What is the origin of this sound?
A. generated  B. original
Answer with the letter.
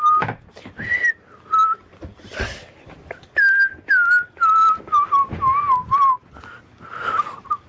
B